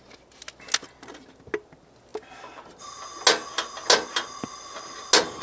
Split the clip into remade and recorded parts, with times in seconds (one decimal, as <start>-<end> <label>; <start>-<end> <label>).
0.0-5.4 recorded